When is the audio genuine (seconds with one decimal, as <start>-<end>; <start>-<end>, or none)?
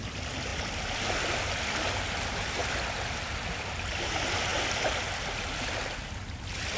0.0-0.5; 1.0-4.5; 5.3-6.8